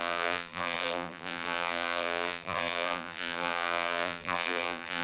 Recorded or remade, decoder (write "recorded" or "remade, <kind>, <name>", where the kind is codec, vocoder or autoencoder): remade, vocoder, BigVGAN v2